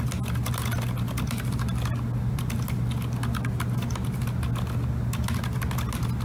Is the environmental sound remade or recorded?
recorded